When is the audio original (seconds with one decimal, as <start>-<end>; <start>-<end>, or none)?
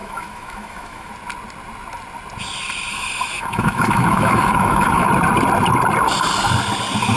1.1-2.9; 5.1-7.2